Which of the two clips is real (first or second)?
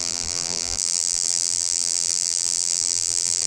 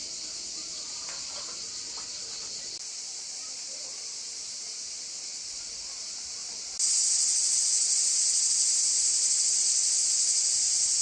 second